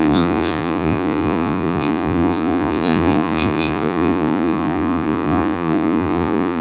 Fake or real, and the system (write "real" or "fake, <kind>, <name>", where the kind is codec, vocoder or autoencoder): fake, vocoder, Vocos